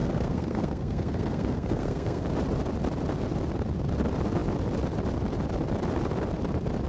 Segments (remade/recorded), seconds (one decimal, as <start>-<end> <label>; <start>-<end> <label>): 0.0-2.3 remade; 2.3-6.9 recorded